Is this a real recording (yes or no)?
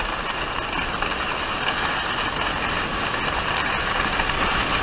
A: yes